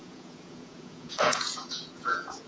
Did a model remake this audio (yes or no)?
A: yes